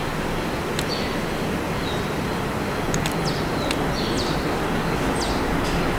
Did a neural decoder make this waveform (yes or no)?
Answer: no